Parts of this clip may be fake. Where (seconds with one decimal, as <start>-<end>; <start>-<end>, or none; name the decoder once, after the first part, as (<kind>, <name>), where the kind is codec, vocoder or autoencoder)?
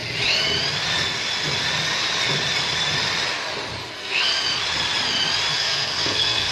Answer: 3.9-4.3 (codec, SNAC); 5.5-6.5